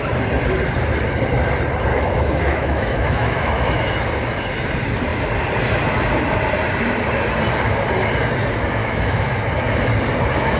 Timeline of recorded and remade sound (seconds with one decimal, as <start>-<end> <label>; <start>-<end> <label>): 0.0-1.9 recorded; 1.9-3.9 remade; 3.9-8.8 recorded; 8.8-9.4 remade; 9.4-10.6 recorded